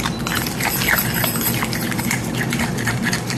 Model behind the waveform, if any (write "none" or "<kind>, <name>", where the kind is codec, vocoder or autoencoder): none